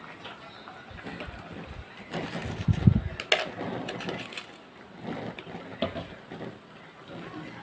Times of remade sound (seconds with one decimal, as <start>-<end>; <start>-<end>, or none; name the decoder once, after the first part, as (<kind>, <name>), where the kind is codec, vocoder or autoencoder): none